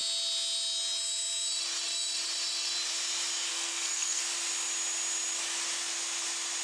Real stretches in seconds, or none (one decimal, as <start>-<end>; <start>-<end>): 0.0-3.5; 4.2-6.6